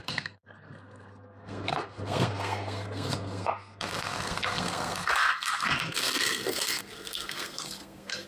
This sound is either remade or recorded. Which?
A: remade